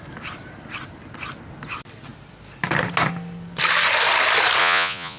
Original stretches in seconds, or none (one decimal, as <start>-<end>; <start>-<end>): 0.0-4.6